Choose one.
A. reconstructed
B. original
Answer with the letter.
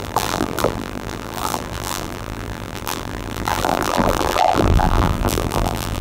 A